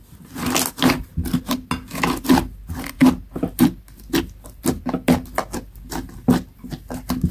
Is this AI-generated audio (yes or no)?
no